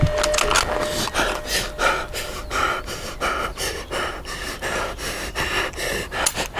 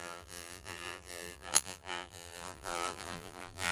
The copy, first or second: second